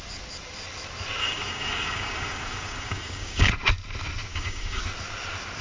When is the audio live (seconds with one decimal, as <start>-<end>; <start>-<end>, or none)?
0.0-1.2; 3.5-4.3; 4.8-5.6